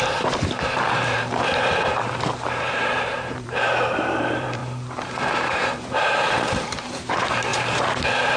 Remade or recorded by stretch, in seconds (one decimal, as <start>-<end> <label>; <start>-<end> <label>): 0.0-4.6 remade; 4.6-5.5 recorded; 5.5-8.4 remade